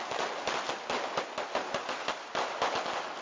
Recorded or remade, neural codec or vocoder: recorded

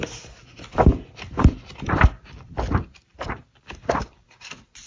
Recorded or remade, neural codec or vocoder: remade, vocoder, BigVGAN v2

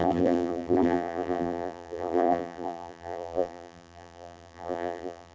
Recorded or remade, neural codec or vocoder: remade, vocoder, BigVGAN v2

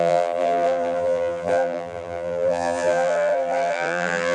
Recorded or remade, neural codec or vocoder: remade, vocoder, BigVGAN v2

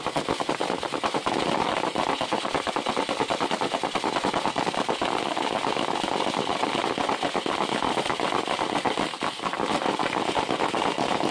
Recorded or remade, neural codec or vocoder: recorded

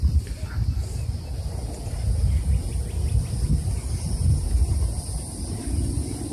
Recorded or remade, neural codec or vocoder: recorded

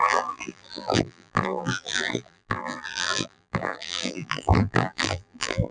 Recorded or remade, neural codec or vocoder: remade, vocoder, BigVGAN v2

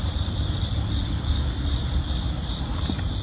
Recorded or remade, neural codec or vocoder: remade, vocoder, BigVGAN v2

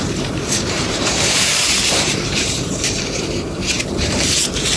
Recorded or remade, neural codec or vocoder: remade, vocoder, BigVGAN v2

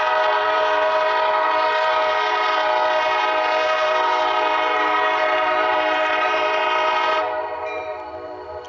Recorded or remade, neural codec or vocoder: remade, vocoder, BigVGAN v2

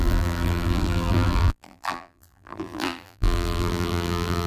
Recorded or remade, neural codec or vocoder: remade, vocoder, BigVGAN v2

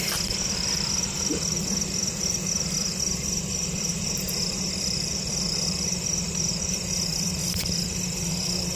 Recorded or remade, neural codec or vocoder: remade, vocoder, BigVGAN v2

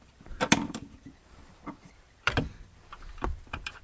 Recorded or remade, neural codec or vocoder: remade, vocoder, BigVGAN v2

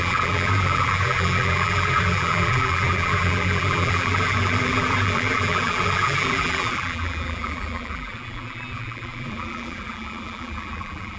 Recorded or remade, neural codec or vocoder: remade, vocoder, BigVGAN v2